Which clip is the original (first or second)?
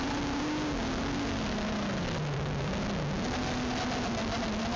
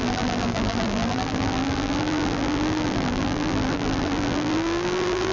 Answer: first